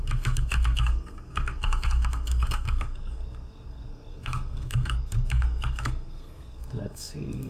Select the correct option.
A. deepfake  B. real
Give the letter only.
A